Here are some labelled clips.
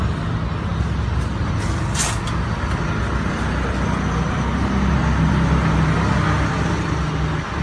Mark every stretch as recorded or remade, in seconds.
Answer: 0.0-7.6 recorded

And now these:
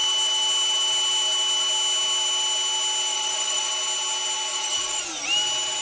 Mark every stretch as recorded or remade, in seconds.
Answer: 0.0-3.1 recorded; 3.1-3.7 remade; 3.7-4.5 recorded; 4.5-5.1 remade; 5.1-5.8 recorded

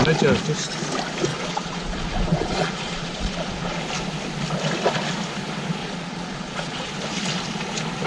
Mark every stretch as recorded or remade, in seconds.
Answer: 0.0-1.3 recorded; 1.3-3.8 remade; 3.8-5.8 recorded; 5.8-6.9 remade; 6.9-8.1 recorded

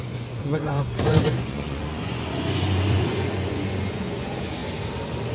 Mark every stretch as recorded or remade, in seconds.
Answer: 0.0-4.6 remade; 4.6-5.3 recorded

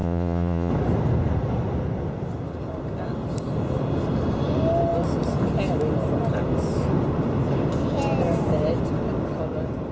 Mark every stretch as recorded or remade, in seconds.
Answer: 0.0-0.7 remade; 0.7-9.9 recorded

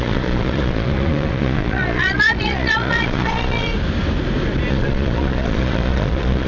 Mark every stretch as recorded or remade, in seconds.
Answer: 0.0-3.7 remade; 3.7-4.7 recorded; 4.7-6.5 remade

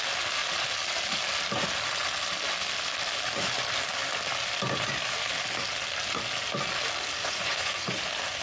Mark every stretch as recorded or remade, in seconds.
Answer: 0.0-7.2 recorded; 7.2-8.0 remade; 8.0-8.4 recorded